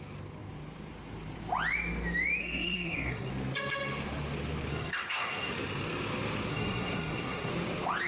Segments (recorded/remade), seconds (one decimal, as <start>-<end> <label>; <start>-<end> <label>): 0.0-2.4 recorded; 2.4-3.3 remade; 3.3-4.7 recorded; 4.7-5.5 remade; 5.5-6.5 recorded; 6.5-7.5 remade; 7.5-8.1 recorded